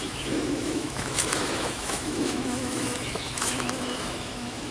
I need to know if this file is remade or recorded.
remade